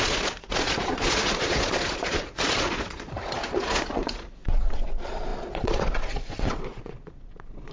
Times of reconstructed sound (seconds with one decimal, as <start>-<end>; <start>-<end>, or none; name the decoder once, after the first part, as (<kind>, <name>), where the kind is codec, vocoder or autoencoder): 0.0-7.7 (vocoder, Vocos)